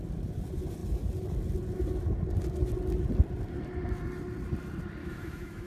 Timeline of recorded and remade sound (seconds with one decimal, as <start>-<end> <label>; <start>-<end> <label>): 0.0-5.0 recorded; 5.0-5.7 remade